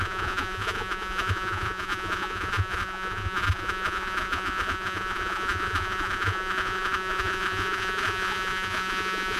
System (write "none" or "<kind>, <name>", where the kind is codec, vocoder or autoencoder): vocoder, Vocos